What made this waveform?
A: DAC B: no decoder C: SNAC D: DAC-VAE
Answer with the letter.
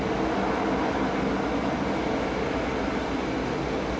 B